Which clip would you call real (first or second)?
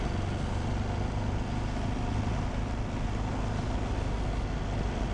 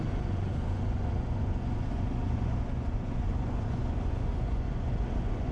first